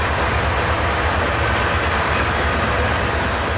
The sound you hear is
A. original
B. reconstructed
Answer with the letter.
A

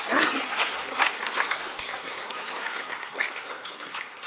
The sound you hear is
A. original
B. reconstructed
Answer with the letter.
B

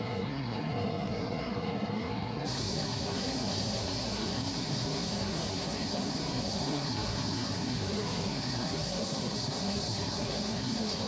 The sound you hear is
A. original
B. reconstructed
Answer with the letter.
B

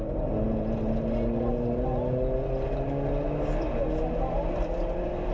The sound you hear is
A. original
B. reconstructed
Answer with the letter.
A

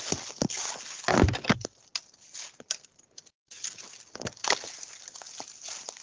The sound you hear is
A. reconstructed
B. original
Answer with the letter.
B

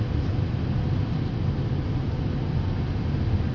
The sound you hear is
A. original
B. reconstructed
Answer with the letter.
A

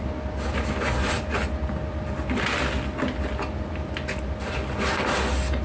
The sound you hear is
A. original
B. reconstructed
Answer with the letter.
A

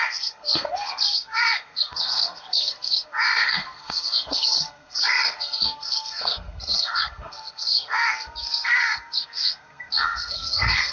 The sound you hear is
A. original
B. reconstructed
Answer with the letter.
B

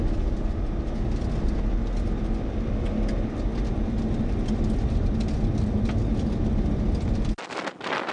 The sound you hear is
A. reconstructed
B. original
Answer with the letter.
B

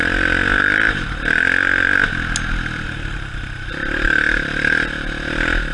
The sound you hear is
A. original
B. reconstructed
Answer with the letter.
A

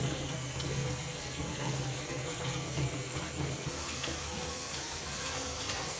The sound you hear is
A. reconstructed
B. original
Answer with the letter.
A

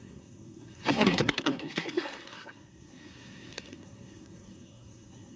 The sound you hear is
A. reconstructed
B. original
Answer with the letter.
A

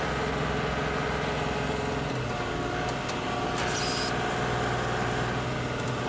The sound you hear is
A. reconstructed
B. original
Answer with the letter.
B